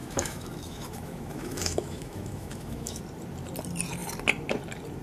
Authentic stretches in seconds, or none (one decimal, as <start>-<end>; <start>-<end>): 3.0-5.0